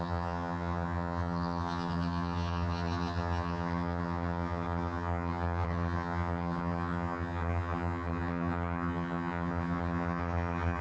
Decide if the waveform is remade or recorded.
remade